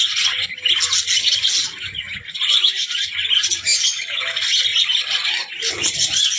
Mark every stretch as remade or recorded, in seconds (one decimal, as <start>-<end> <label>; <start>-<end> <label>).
0.0-6.4 recorded